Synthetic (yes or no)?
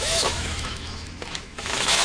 yes